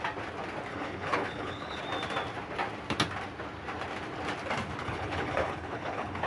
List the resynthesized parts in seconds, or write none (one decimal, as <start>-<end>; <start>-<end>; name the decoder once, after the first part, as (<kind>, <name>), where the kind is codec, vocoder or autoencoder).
0.7-1.8 (codec, HILCodec); 4.8-6.3